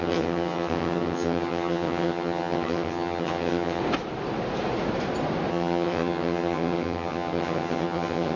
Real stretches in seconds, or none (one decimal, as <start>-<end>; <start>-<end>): 3.8-5.5